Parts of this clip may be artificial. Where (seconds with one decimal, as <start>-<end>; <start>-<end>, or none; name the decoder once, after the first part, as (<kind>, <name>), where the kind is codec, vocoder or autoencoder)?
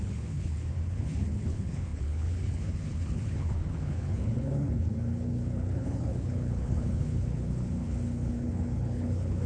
0.0-9.5 (codec, HILCodec)